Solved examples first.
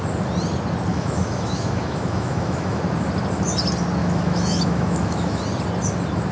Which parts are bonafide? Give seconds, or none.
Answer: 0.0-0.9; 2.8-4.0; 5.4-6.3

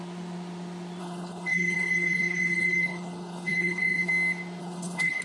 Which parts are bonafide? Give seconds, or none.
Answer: 0.0-1.0; 4.1-4.6

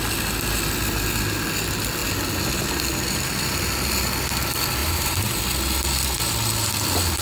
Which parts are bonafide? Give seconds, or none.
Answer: 0.0-4.8; 5.4-7.2